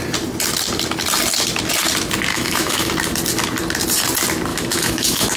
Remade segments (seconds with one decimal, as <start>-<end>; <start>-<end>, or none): 2.3-2.9; 4.5-5.4